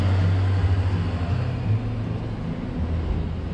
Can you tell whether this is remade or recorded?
recorded